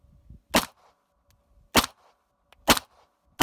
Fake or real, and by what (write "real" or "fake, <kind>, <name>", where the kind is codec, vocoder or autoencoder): real